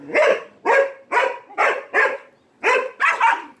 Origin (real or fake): real